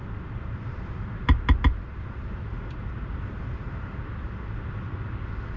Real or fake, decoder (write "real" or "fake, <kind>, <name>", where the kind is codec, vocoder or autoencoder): real